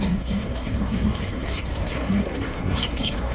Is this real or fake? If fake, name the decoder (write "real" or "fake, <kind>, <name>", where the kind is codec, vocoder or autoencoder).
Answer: fake, codec, SNAC